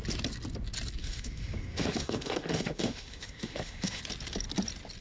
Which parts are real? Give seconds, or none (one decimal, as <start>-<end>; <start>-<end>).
0.0-1.0; 4.0-5.0